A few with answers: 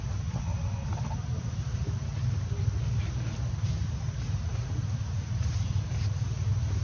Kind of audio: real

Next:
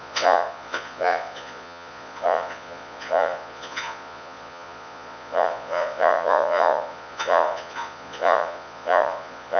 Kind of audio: fake